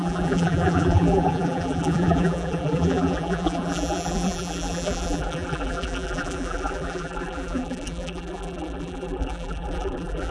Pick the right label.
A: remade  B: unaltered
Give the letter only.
A